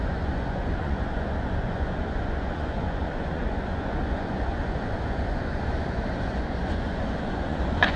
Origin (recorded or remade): remade